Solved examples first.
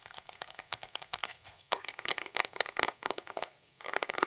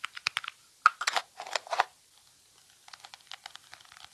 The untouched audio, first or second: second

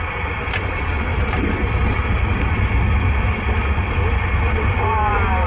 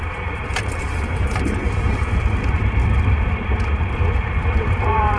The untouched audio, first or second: first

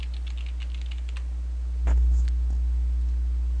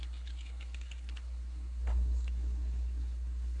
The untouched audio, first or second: first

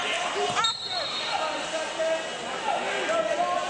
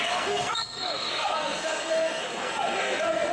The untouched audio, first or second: first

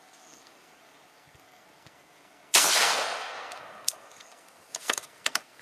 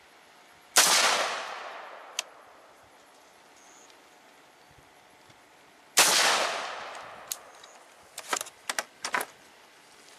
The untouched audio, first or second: second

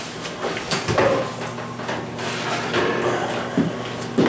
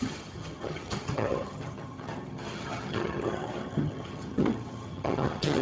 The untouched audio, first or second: first